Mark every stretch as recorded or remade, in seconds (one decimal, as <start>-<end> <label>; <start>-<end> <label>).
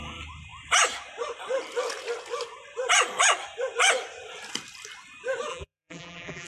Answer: 0.0-5.5 recorded; 5.5-6.5 remade